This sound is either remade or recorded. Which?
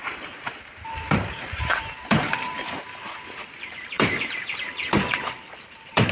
remade